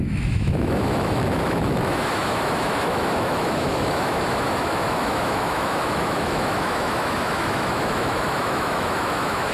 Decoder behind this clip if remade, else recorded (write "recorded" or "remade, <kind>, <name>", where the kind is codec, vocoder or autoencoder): remade, autoencoder, DAC-VAE